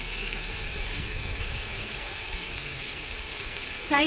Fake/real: fake